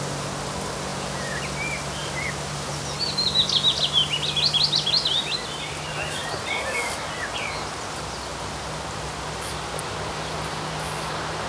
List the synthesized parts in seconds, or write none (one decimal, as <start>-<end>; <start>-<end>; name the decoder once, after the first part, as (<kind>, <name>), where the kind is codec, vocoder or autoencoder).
0.9-1.4 (vocoder, Vocos)

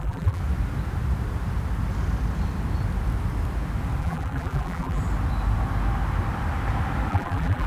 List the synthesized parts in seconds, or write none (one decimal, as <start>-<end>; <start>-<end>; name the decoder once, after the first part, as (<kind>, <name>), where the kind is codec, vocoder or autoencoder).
0.0-0.4 (vocoder, BigVGAN v2); 4.0-5.0; 7.1-7.7

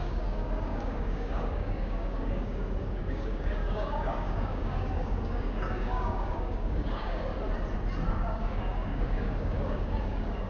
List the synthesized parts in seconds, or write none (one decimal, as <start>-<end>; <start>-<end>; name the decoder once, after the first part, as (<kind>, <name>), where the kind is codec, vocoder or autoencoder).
0.0-7.3 (codec, DAC); 8.1-10.5

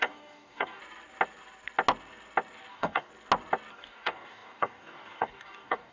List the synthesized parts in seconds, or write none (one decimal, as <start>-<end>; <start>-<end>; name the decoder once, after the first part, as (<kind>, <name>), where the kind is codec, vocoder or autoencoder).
0.0-0.8 (codec, DAC); 2.7-3.1; 3.7-5.9